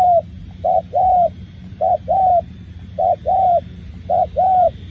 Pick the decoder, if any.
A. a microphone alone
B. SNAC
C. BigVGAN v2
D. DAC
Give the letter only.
C